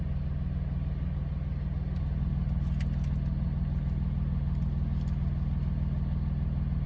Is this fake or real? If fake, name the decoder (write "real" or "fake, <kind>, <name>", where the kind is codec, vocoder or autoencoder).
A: real